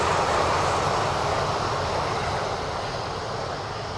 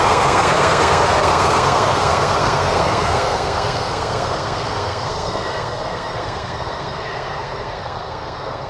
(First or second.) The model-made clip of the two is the second